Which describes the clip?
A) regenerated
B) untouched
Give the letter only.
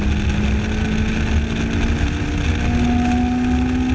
B